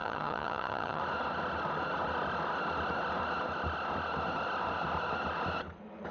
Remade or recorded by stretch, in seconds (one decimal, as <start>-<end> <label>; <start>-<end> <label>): 0.0-1.0 remade; 1.0-6.1 recorded